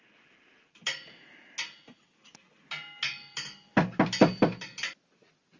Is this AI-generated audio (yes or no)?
no